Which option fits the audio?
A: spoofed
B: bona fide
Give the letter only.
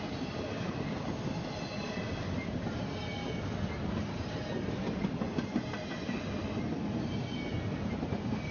B